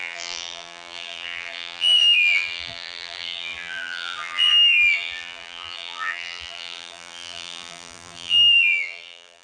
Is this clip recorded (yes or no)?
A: no